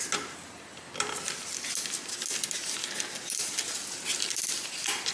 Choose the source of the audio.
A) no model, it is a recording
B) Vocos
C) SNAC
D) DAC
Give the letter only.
A